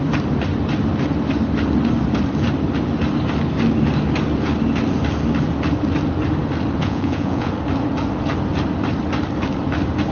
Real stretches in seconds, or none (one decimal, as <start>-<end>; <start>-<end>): 0.0-6.8; 7.5-10.1